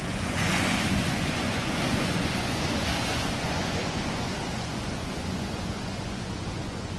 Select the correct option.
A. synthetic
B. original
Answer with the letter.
A